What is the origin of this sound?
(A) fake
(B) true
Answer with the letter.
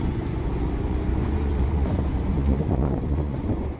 A